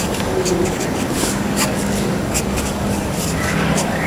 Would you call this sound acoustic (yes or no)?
no